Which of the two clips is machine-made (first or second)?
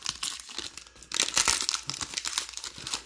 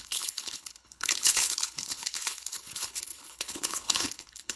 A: second